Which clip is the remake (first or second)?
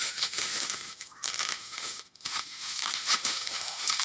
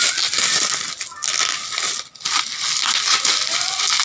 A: first